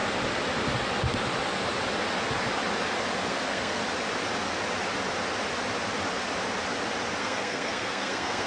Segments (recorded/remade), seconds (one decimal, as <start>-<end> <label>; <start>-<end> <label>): 0.0-3.3 recorded; 3.3-3.8 remade; 3.8-7.2 recorded; 7.2-8.5 remade